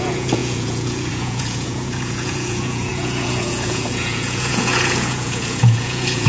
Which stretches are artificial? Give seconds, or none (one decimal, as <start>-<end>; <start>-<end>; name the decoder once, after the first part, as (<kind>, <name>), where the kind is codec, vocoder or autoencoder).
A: 0.0-6.3 (vocoder, Vocos)